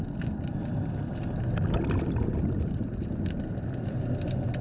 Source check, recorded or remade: recorded